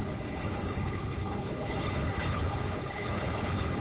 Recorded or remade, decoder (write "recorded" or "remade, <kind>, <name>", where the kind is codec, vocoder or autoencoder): remade, codec, HILCodec